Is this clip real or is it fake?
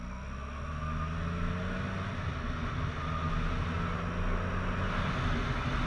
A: real